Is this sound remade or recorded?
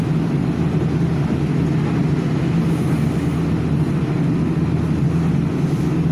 recorded